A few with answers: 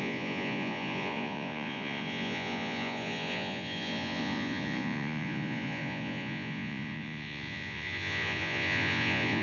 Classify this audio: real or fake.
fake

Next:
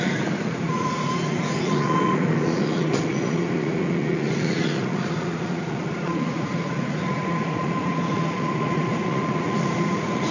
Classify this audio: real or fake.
fake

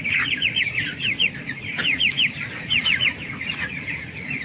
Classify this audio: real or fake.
fake